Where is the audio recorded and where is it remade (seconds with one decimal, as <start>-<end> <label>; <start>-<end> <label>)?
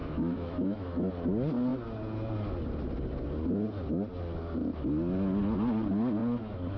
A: 0.0-1.1 remade; 1.1-6.8 recorded